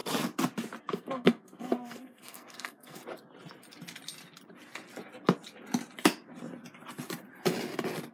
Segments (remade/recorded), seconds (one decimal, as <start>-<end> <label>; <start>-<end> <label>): 0.0-0.8 recorded; 0.8-3.0 remade; 3.0-8.1 recorded